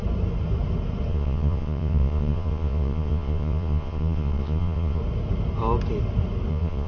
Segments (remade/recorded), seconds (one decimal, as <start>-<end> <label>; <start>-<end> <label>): 0.0-1.1 recorded; 1.1-5.0 remade; 5.0-6.5 recorded; 6.5-6.9 remade